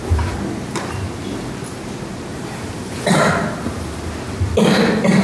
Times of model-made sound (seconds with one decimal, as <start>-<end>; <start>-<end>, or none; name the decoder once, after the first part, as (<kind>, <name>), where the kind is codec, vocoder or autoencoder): 2.3-3.2 (vocoder, BigVGAN v2)